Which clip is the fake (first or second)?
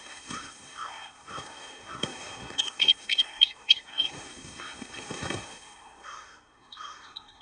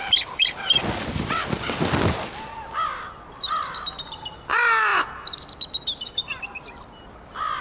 first